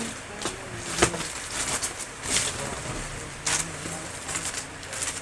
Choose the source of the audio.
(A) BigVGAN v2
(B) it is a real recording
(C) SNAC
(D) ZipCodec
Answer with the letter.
B